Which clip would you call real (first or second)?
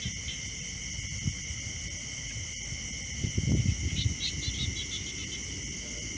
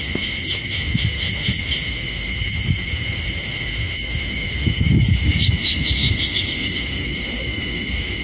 first